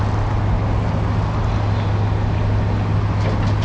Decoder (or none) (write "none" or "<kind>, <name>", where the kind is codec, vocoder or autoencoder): none